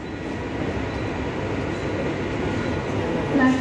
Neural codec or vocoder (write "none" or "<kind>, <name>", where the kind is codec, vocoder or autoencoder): none